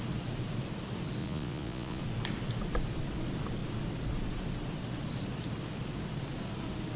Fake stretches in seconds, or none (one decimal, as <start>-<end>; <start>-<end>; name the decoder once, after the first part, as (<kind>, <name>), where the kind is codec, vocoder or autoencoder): 1.2-2.0 (vocoder, Vocos)